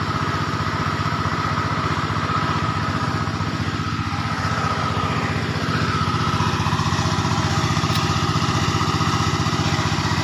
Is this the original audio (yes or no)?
yes